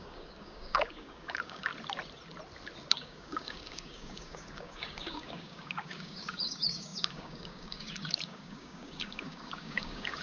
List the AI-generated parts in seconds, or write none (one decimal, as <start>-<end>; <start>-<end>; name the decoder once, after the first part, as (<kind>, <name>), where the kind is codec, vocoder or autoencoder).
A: 0.0-1.7 (codec, DAC); 2.9-10.2